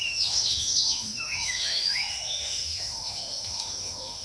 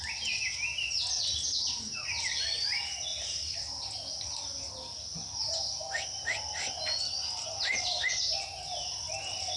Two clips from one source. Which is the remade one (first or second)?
first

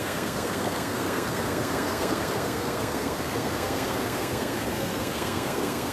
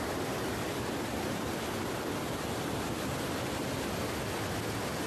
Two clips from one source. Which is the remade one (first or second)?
first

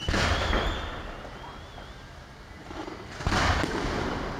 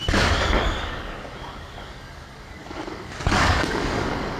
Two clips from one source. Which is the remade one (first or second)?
second